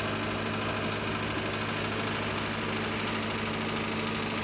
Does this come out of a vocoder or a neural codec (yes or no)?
no